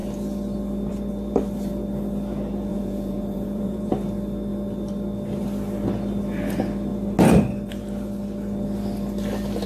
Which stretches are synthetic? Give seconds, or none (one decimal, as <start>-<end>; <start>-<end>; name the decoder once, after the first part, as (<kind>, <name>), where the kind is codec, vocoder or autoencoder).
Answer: 2.7-3.9 (vocoder, Vocos)